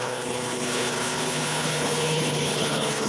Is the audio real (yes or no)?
no